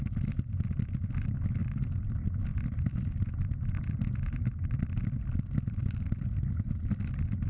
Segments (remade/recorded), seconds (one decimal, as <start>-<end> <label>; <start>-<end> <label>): 0.0-2.5 recorded; 2.5-4.1 remade; 4.1-7.5 recorded